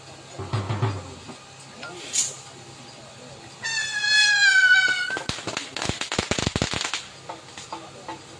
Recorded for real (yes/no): yes